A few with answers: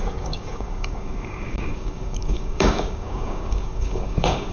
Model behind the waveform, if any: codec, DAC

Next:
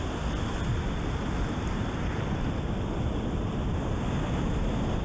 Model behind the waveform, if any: none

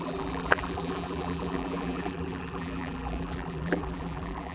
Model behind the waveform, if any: vocoder, BigVGAN v2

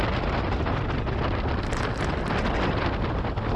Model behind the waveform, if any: none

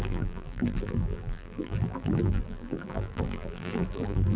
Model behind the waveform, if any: vocoder, BigVGAN v2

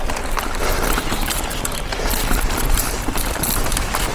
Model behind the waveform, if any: vocoder, BigVGAN v2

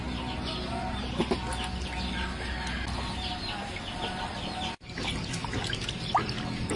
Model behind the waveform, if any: none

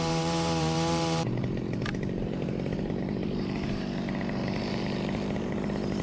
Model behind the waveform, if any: vocoder, BigVGAN v2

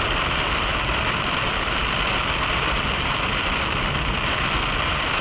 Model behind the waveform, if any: vocoder, BigVGAN v2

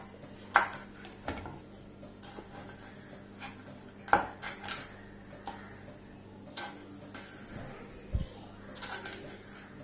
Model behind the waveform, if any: none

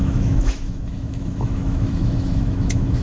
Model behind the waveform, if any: autoencoder, DAC-VAE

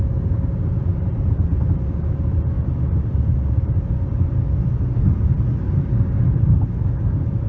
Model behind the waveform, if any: none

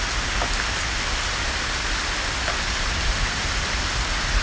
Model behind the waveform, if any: none